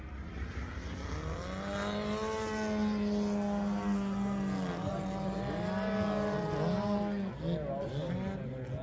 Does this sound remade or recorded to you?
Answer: recorded